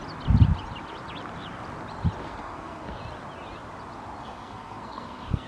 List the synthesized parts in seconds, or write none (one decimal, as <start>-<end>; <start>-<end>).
2.2-3.0; 4.2-5.5